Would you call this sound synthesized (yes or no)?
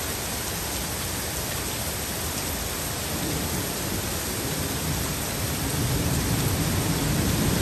no